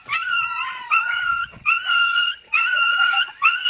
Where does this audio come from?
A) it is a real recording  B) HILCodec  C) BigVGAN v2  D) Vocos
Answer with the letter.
D